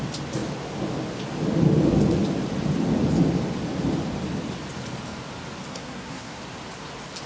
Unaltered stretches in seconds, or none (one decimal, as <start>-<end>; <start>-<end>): 0.0-5.7; 6.4-7.3